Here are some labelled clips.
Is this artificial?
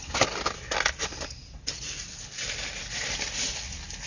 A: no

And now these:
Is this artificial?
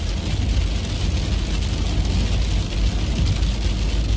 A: no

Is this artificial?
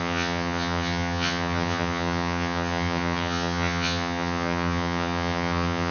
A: yes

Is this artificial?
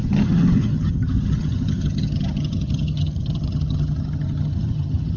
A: yes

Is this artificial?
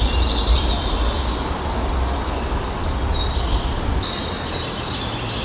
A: no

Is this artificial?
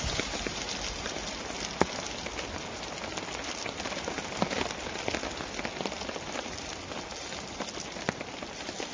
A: no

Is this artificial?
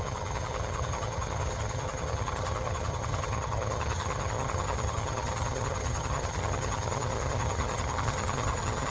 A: yes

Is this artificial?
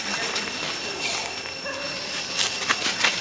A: no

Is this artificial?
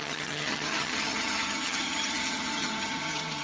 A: yes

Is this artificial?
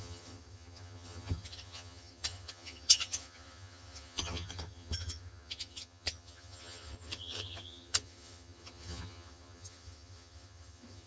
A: yes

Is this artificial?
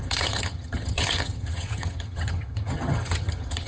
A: yes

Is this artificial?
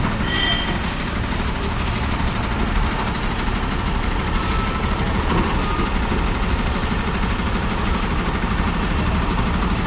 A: no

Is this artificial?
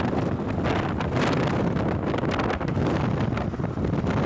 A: no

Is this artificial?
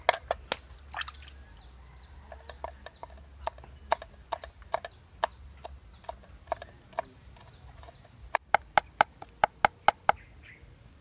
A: no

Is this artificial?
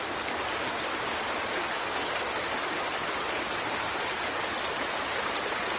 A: no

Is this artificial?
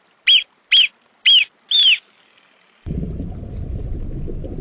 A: no